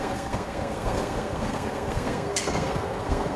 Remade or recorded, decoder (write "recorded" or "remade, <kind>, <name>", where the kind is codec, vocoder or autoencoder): remade, codec, SNAC